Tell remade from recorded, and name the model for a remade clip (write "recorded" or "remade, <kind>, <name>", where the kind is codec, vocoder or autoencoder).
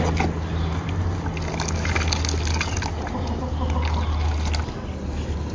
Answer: recorded